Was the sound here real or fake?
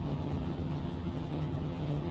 fake